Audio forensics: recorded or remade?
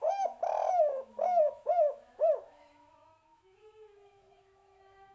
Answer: remade